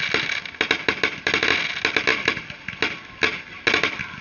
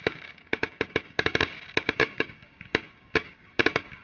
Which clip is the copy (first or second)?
second